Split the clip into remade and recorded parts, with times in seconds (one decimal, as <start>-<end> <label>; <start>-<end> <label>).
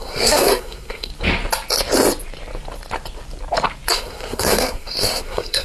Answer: 0.0-1.1 remade; 1.1-3.9 recorded; 3.9-5.6 remade